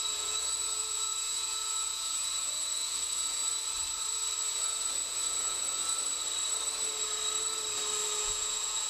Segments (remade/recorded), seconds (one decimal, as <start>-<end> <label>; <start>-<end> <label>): 0.0-3.4 remade; 3.4-4.5 recorded; 4.5-5.8 remade; 5.8-8.2 recorded; 8.2-8.9 remade